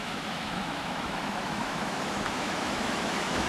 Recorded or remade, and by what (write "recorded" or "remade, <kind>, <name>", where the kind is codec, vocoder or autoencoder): remade, autoencoder, DAC-VAE